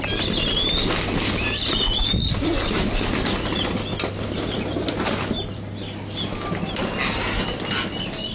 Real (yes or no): yes